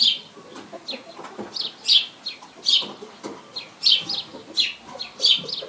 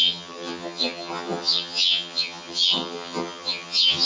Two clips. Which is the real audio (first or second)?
first